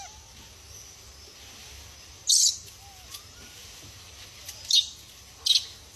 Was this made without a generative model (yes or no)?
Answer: yes